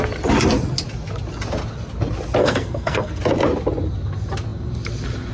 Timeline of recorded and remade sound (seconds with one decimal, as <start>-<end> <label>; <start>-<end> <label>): 0.0-2.4 recorded; 2.4-3.2 remade; 3.2-5.3 recorded